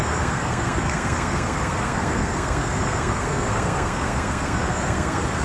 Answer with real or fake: fake